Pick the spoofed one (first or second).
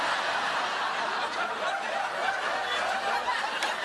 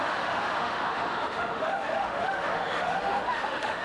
second